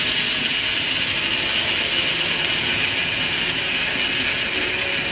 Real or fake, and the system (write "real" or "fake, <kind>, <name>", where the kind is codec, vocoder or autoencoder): real